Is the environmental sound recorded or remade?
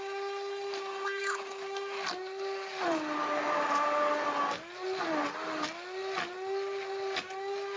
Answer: recorded